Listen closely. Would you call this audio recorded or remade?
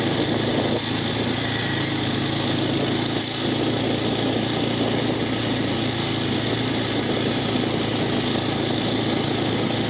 recorded